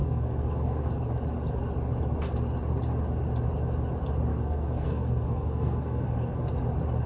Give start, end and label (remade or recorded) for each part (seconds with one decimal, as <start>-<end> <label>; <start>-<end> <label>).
0.0-0.9 remade; 0.9-4.3 recorded; 4.3-6.5 remade; 6.5-7.1 recorded